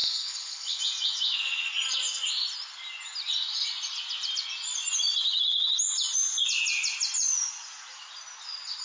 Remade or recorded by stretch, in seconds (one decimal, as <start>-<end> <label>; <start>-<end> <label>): 0.0-0.8 remade; 0.8-8.8 recorded

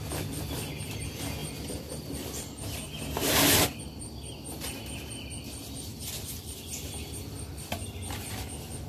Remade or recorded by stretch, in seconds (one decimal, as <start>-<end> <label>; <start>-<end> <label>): 0.0-1.4 recorded; 1.4-3.8 remade; 3.8-5.9 recorded; 5.9-8.3 remade; 8.3-8.9 recorded

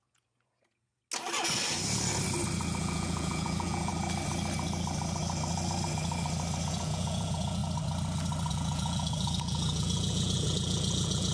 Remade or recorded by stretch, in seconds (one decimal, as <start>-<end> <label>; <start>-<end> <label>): 0.0-1.0 remade; 1.0-2.8 recorded; 2.8-3.9 remade; 3.9-6.7 recorded; 6.7-7.6 remade; 7.6-8.5 recorded; 8.5-11.3 remade

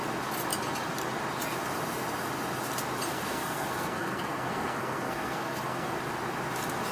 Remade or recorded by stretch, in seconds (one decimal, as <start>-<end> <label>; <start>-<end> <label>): 0.0-3.1 recorded; 3.1-6.0 remade; 6.0-6.9 recorded

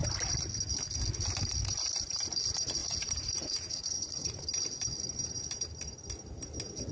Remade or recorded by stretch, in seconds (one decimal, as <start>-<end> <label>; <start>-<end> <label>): 0.0-2.8 recorded; 2.8-4.4 remade; 4.4-6.9 recorded